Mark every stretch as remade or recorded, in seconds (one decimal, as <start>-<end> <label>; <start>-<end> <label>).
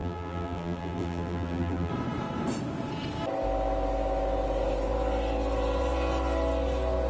0.0-1.9 remade; 1.9-7.1 recorded